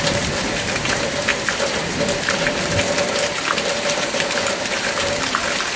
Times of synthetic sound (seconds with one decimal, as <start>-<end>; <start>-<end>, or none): 0.0-5.8